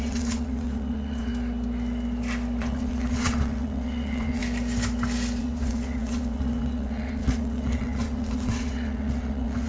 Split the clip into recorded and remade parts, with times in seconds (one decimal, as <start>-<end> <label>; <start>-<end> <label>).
0.0-1.3 remade; 1.3-2.6 recorded; 2.6-4.4 remade; 4.4-5.4 recorded; 5.4-9.7 remade